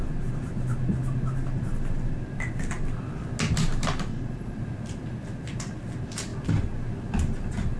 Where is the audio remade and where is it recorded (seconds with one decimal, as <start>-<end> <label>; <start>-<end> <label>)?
0.0-4.1 recorded; 4.1-4.6 remade; 4.6-7.8 recorded